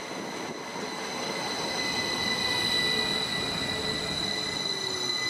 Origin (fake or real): real